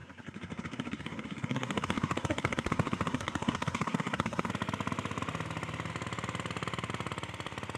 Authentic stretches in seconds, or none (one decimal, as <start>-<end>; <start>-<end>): 4.5-7.8